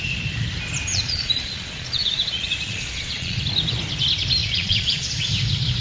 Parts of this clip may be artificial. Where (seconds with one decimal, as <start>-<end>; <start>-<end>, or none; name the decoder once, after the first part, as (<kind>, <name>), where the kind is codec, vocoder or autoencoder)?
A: 0.9-3.4 (vocoder, Vocos); 4.4-5.1